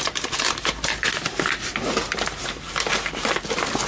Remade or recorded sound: recorded